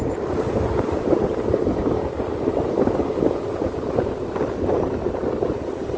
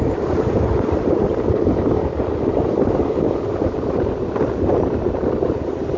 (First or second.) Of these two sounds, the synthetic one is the second